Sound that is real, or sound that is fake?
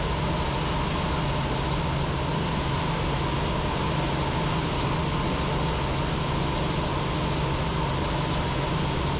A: real